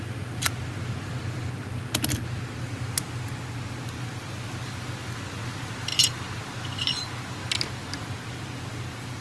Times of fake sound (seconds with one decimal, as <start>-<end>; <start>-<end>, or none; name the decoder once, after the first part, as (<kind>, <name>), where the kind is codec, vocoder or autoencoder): none